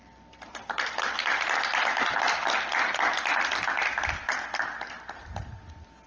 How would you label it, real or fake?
real